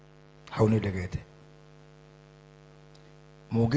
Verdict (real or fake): real